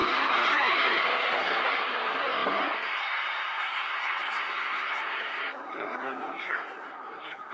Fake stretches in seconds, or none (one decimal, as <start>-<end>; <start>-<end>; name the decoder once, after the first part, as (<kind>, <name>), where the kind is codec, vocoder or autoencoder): 0.0-7.5 (codec, SNAC)